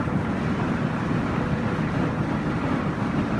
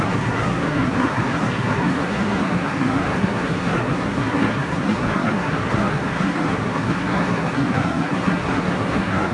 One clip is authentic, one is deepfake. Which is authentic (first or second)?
first